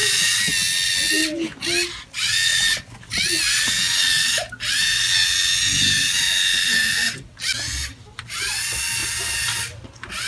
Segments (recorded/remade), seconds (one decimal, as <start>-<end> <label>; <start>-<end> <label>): 0.0-10.3 recorded